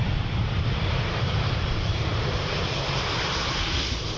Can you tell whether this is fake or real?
fake